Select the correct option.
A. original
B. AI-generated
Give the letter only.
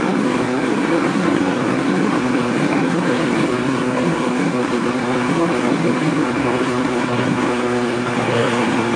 B